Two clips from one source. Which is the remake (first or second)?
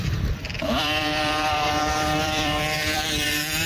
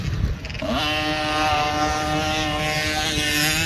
first